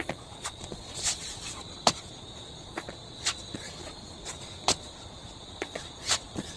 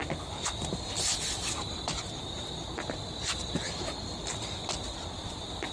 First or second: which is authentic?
second